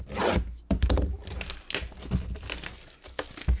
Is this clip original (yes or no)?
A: yes